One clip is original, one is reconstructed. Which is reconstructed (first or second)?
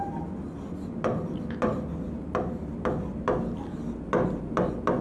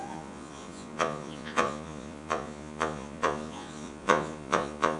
second